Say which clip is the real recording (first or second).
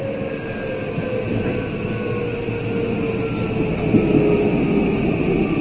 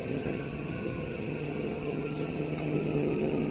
first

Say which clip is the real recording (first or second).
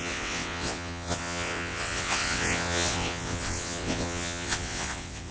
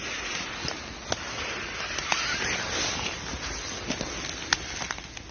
second